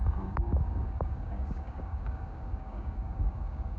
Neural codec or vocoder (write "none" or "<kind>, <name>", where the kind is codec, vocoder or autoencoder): codec, DAC